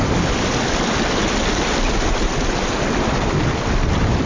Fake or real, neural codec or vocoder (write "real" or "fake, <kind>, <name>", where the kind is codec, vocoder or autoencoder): real